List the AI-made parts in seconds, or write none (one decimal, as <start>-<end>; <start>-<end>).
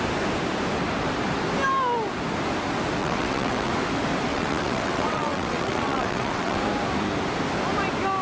3.0-3.7; 4.3-6.6